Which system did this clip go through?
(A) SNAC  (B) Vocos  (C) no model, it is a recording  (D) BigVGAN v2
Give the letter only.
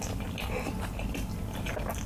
C